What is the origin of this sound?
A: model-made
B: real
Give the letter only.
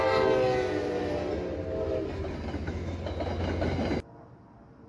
B